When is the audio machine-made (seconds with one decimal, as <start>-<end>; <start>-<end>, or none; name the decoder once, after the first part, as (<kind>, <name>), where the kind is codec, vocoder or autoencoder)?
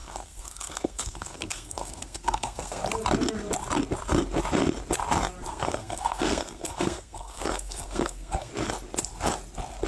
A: 0.0-2.8 (codec, SNAC); 5.5-8.5